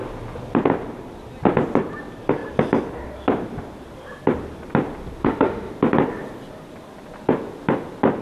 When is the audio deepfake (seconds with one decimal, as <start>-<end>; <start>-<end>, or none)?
5.2-5.7